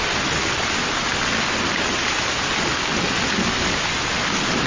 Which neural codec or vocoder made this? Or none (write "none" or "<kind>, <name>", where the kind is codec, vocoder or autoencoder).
none